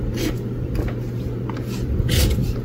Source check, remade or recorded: recorded